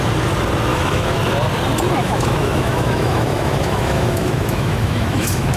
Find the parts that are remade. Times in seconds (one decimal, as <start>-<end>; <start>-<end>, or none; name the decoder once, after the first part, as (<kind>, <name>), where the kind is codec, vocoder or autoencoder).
0.7-1.2 (autoencoder, DAC-VAE); 2.0-5.6